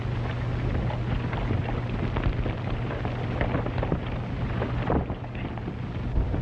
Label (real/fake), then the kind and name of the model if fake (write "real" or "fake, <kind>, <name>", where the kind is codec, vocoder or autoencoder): real